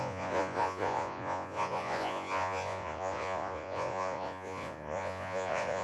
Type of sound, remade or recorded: remade